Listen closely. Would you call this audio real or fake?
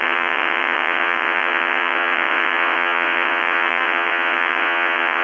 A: fake